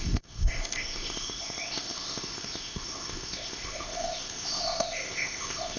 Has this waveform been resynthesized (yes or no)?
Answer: yes